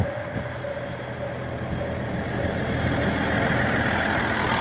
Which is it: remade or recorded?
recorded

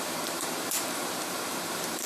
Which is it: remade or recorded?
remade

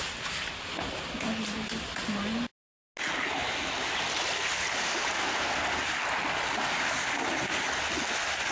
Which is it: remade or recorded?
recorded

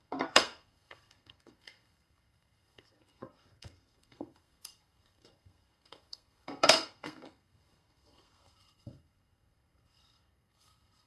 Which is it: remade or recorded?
remade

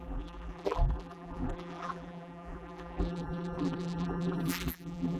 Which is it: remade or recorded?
remade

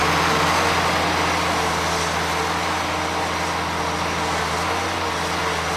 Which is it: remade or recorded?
recorded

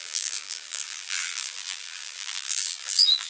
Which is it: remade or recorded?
remade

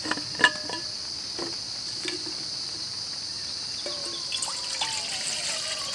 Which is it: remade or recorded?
recorded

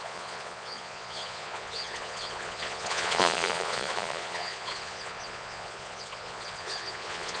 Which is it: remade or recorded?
remade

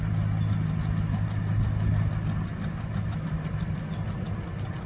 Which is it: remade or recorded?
recorded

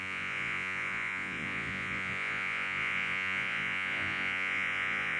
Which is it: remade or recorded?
remade